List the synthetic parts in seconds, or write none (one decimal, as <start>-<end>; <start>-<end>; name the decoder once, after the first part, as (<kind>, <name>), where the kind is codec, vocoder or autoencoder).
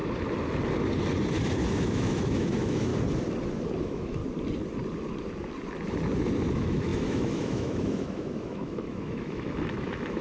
1.7-2.9 (autoencoder, DAC-VAE); 3.8-4.2; 6.5-10.2